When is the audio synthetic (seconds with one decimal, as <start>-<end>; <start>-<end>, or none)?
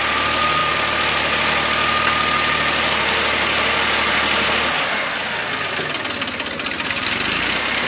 none